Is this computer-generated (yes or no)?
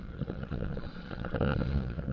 yes